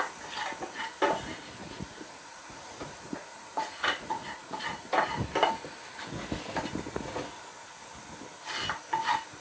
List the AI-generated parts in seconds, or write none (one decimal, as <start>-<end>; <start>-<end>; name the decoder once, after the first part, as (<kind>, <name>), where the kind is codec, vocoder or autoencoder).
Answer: 1.6-4.6 (vocoder, Vocos)